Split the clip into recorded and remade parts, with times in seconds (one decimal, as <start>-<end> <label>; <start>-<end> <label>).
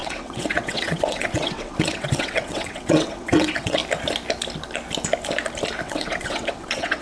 0.0-3.8 remade; 3.8-5.8 recorded; 5.8-7.0 remade